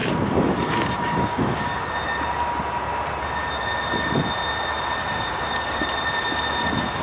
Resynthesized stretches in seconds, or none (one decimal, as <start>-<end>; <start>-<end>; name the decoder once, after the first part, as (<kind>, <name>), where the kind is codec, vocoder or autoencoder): 0.0-1.9 (codec, DAC); 5.0-5.8